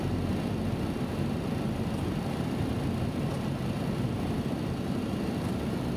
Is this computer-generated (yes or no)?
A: no